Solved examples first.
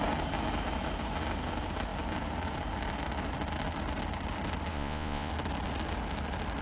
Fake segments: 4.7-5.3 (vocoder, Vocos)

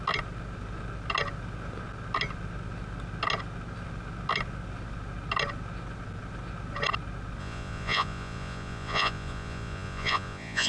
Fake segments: 7.4-10.7 (vocoder, Vocos)

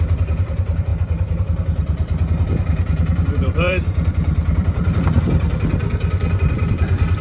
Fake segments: 0.0-7.2 (vocoder, BigVGAN v2)

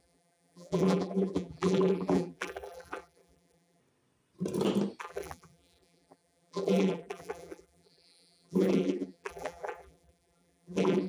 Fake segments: 0.0-3.8 (vocoder, BigVGAN v2); 5.0-11.1

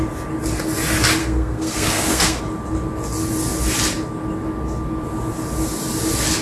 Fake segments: 1.2-2.4 (codec, SNAC)